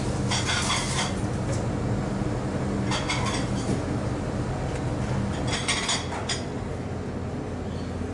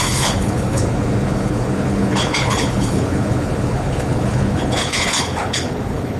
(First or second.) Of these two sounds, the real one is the first